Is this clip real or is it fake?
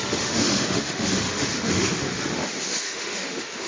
fake